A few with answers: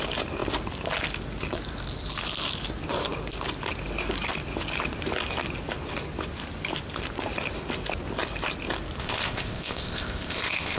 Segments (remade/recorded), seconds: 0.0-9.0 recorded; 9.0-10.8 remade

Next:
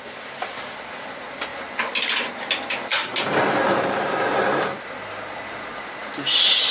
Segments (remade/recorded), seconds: 0.0-2.9 recorded; 2.9-5.7 remade; 5.7-6.7 recorded

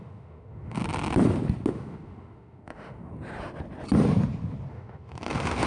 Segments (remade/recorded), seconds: 0.0-0.8 remade; 0.8-1.7 recorded; 1.7-3.1 remade; 3.1-4.7 recorded; 4.7-5.7 remade

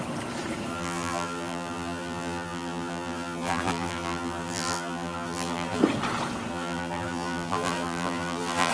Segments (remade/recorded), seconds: 0.0-0.7 recorded; 0.7-5.8 remade; 5.8-6.5 recorded; 6.5-8.7 remade

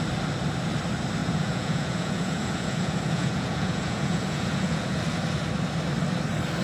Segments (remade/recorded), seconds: 0.0-1.2 recorded; 1.2-5.0 remade; 5.0-6.6 recorded

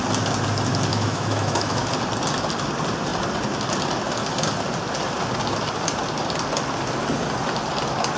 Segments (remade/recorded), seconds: 0.0-0.9 recorded; 0.9-1.9 remade; 1.9-8.2 recorded

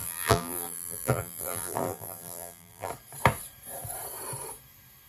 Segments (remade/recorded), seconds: 0.0-2.9 remade; 2.9-5.1 recorded